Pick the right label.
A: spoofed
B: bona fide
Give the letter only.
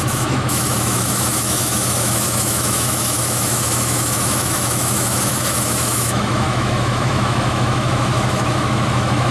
A